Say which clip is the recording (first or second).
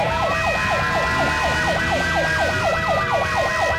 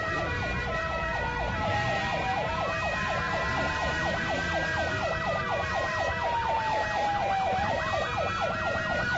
first